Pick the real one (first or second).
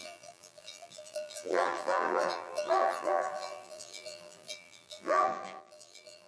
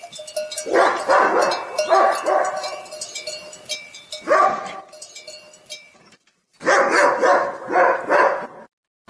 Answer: second